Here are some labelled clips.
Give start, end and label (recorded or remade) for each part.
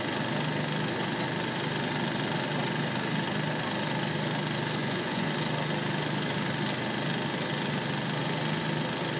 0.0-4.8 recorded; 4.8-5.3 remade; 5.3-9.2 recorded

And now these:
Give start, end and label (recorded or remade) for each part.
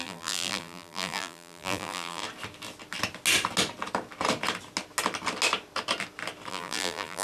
0.0-2.2 remade; 2.2-6.5 recorded; 6.5-7.2 remade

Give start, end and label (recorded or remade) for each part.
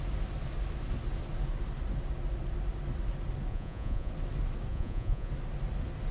0.0-3.5 recorded; 3.5-4.1 remade; 4.1-4.7 recorded; 4.7-5.3 remade; 5.3-6.1 recorded